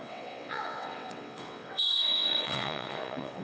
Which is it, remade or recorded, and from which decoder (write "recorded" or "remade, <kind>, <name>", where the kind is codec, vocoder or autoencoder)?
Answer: remade, vocoder, WaveNeXt